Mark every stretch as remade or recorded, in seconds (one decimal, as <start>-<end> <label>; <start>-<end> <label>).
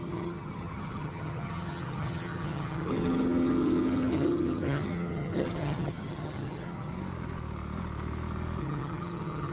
0.0-6.9 remade; 6.9-8.6 recorded; 8.6-9.5 remade